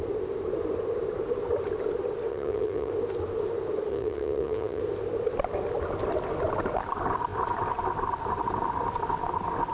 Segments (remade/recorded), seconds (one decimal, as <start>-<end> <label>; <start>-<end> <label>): 0.0-2.3 recorded; 2.3-2.9 remade; 2.9-3.9 recorded; 3.9-4.8 remade; 4.8-9.7 recorded